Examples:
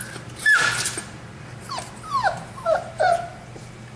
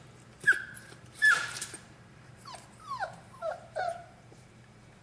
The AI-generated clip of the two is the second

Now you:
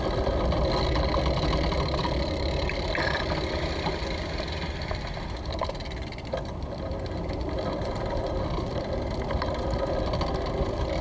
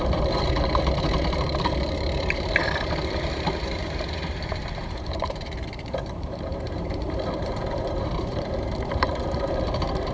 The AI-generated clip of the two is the second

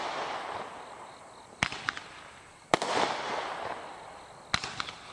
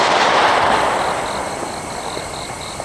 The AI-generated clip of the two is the second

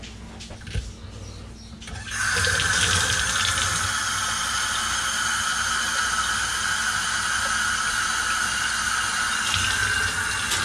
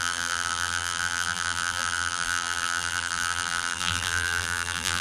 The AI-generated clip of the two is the second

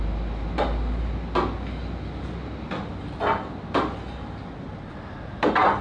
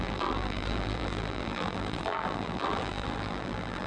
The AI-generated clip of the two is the second